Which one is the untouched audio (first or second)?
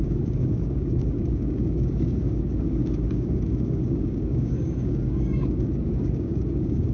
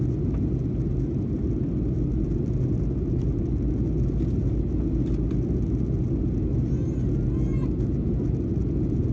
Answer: second